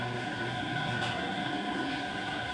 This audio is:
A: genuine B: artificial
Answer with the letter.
B